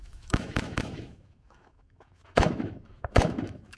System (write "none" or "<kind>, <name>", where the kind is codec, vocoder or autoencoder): autoencoder, DAC-VAE